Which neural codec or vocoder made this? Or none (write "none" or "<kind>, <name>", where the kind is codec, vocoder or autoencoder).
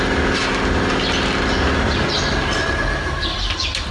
none